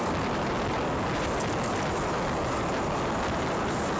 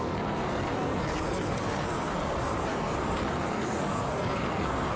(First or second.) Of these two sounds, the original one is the first